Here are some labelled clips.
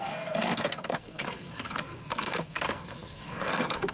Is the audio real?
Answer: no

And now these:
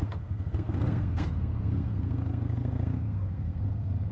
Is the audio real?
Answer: no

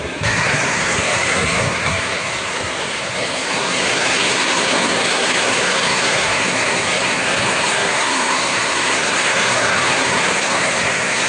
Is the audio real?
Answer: no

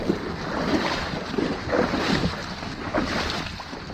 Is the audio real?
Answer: yes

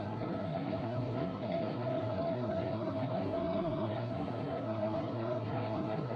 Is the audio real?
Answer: no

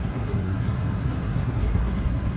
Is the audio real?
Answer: no